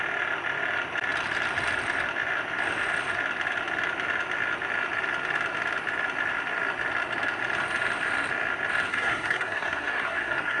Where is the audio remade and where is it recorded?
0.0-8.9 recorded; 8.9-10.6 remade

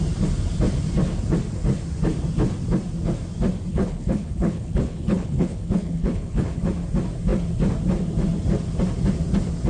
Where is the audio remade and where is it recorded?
0.0-3.7 recorded; 3.7-6.6 remade; 6.6-9.7 recorded

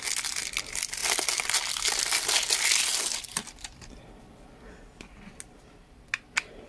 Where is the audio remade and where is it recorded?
0.0-1.0 recorded; 1.0-2.1 remade; 2.1-2.9 recorded; 2.9-4.6 remade; 4.6-6.7 recorded

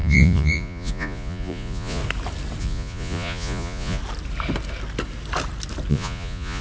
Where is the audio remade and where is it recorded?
0.0-2.0 remade; 2.0-2.6 recorded; 2.6-4.0 remade; 4.0-5.9 recorded; 5.9-6.6 remade

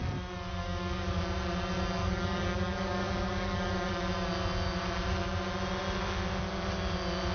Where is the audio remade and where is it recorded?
0.0-0.6 recorded; 0.6-1.2 remade; 1.2-2.0 recorded; 2.0-3.9 remade; 3.9-7.3 recorded

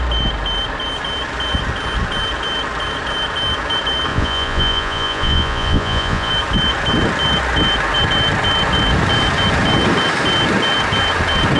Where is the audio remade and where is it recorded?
0.0-4.1 recorded; 4.1-6.3 remade; 6.3-11.6 recorded

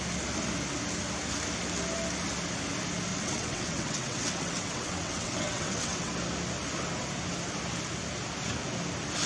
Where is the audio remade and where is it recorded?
0.0-3.1 recorded; 3.1-6.1 remade; 6.1-9.3 recorded

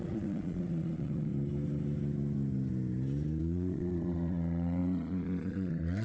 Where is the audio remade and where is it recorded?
0.0-1.3 remade; 1.3-3.4 recorded; 3.4-6.0 remade